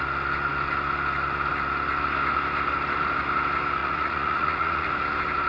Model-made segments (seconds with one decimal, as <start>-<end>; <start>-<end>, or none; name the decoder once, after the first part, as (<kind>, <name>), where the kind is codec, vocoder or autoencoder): 3.8-4.9 (vocoder, Vocos)